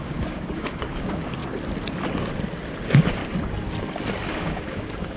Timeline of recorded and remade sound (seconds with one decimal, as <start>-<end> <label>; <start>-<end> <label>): 0.0-1.4 remade; 1.4-2.8 recorded; 2.8-3.2 remade; 3.2-4.3 recorded; 4.3-5.2 remade